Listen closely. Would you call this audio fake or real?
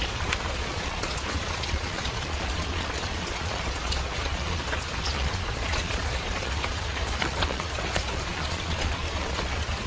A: fake